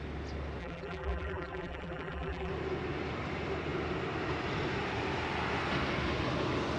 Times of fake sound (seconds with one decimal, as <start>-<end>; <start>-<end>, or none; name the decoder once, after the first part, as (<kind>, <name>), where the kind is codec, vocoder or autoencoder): 0.6-2.5 (vocoder, BigVGAN v2)